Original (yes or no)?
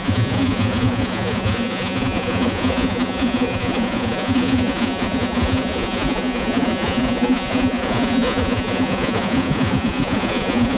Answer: no